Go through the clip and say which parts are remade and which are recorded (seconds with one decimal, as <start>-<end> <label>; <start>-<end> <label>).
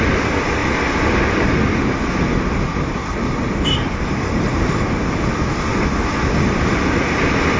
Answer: 0.0-3.0 recorded; 3.0-5.1 remade; 5.1-7.6 recorded